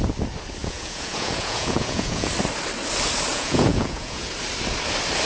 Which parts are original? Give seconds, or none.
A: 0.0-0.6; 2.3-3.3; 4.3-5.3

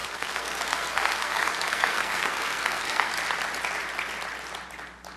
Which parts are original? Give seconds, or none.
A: 3.1-5.2

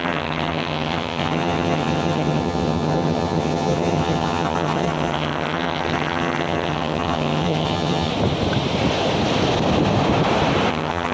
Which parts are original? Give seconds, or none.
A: 8.1-10.7